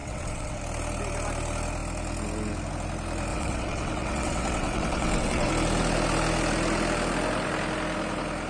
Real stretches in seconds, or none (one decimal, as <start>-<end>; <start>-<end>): 0.6-3.3; 5.5-8.5